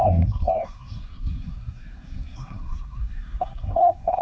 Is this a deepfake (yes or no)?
yes